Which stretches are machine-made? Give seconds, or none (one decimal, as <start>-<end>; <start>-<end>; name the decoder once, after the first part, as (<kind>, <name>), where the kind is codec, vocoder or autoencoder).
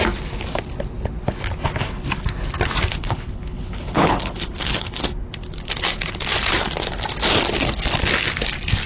2.9-5.1 (codec, HILCodec)